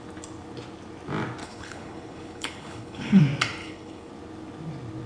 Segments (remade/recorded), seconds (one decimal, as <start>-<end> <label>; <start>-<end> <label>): 0.0-1.4 recorded; 1.4-3.2 remade; 3.2-3.6 recorded; 3.6-4.1 remade; 4.1-5.1 recorded